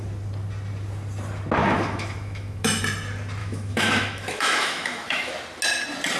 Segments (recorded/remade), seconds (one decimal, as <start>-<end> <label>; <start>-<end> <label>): 0.0-1.6 recorded; 1.6-2.8 remade; 2.8-3.4 recorded; 3.4-5.3 remade; 5.3-6.2 recorded